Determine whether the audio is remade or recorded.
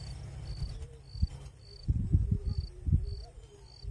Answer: recorded